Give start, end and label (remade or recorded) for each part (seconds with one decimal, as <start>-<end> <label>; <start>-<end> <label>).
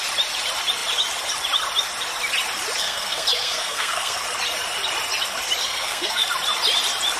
0.0-2.8 recorded; 2.8-4.2 remade; 4.2-5.6 recorded; 5.6-6.3 remade; 6.3-7.2 recorded